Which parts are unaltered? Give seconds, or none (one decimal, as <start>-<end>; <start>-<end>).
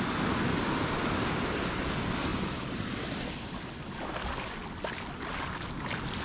0.0-6.2